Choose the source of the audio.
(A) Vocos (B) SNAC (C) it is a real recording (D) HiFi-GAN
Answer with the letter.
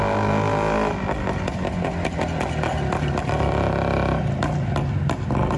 C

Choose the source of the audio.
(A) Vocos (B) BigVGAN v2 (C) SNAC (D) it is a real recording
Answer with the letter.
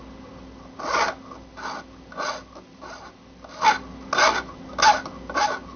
D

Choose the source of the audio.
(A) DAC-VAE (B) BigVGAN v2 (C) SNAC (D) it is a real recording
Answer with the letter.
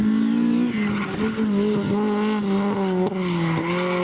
D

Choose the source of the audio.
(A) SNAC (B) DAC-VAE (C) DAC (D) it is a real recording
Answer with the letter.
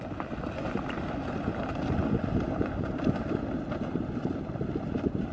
D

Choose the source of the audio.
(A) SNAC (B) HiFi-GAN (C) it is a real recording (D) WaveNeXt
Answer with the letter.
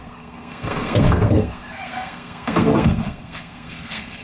A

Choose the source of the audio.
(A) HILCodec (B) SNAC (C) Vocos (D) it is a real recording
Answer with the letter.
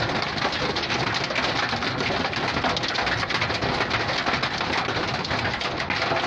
D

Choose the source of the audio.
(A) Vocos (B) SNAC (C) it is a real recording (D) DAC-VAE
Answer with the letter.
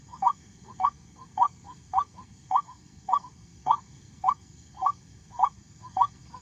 B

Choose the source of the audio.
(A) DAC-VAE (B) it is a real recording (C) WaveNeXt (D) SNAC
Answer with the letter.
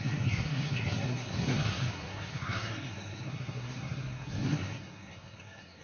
D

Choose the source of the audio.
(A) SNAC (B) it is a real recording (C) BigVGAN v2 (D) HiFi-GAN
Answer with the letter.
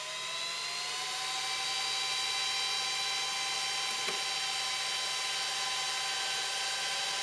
B